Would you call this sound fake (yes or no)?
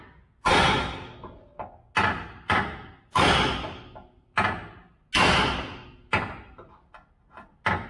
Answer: no